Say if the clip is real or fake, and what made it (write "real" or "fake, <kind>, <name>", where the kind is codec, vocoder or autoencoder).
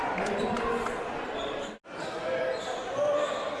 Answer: real